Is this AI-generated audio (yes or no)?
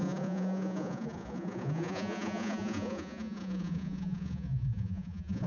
yes